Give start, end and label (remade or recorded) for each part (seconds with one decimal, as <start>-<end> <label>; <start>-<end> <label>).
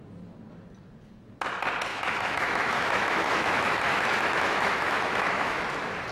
0.0-1.9 recorded; 1.9-5.6 remade; 5.6-6.1 recorded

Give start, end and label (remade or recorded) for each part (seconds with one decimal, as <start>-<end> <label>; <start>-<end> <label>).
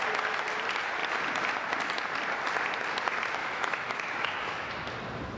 0.0-3.4 recorded; 3.4-4.7 remade; 4.7-5.4 recorded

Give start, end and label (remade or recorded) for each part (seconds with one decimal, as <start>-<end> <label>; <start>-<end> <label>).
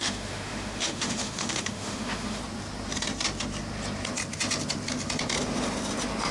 0.0-2.4 remade; 2.4-6.3 recorded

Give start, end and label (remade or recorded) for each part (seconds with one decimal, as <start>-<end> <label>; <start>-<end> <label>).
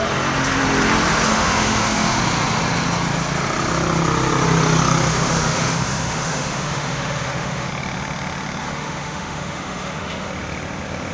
0.0-1.3 recorded; 1.3-2.2 remade; 2.2-5.1 recorded; 5.1-7.7 remade; 7.7-8.6 recorded; 8.6-10.3 remade; 10.3-11.1 recorded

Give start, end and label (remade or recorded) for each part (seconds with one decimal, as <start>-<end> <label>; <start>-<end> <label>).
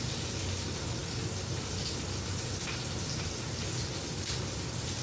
0.0-5.0 recorded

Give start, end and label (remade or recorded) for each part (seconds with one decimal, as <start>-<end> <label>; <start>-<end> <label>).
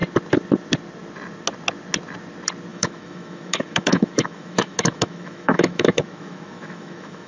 0.0-2.7 recorded; 2.7-7.3 remade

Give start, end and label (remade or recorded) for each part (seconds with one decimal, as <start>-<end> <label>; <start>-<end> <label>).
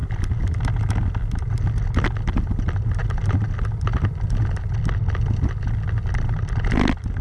0.0-7.2 recorded